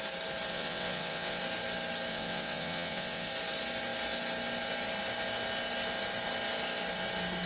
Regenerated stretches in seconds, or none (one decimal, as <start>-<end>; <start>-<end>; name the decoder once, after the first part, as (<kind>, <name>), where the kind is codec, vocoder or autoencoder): 0.5-1.4 (vocoder, WaveNeXt); 2.1-3.3